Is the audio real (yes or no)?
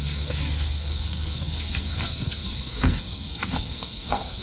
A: no